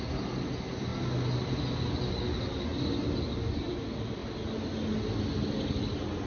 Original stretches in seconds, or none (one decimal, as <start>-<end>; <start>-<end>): 0.0-2.7; 3.8-6.3